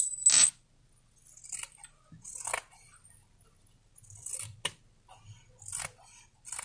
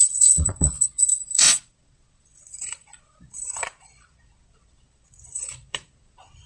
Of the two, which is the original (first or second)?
first